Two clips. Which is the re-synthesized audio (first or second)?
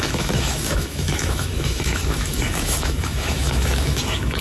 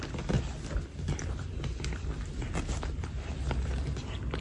first